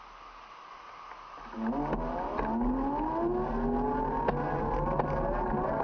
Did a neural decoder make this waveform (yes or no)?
no